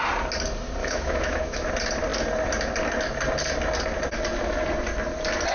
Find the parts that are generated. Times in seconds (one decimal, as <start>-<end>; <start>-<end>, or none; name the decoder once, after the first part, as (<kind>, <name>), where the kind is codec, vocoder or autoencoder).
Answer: 0.8-1.7 (autoencoder, DAC-VAE)